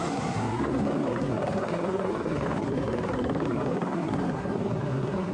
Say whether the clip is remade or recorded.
remade